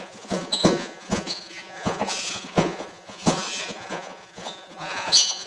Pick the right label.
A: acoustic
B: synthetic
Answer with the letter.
B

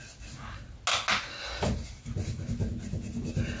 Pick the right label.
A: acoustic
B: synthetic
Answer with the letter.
A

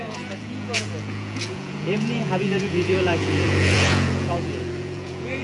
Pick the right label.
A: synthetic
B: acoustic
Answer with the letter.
A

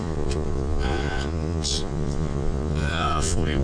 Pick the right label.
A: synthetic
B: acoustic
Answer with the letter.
A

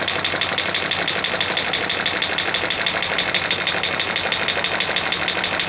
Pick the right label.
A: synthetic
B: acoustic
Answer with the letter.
B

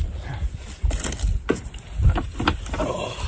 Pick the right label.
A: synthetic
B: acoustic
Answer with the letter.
B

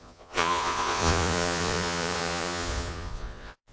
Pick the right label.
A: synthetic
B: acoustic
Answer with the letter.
A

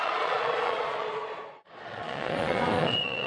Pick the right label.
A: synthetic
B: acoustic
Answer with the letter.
A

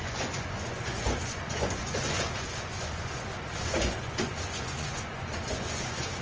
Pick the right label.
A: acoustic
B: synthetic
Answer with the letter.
B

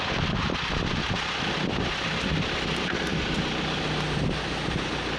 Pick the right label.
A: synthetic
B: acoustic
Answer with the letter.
B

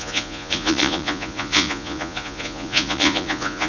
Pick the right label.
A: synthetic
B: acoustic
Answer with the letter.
A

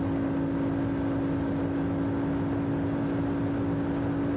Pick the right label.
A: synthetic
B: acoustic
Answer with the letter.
B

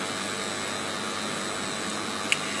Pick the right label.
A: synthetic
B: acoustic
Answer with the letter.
B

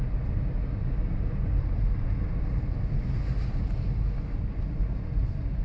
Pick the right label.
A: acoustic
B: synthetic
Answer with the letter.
A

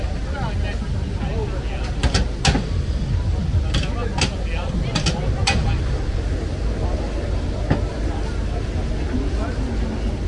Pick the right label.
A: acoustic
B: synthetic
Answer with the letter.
A